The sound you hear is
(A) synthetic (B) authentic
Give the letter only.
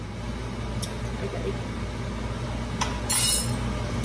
B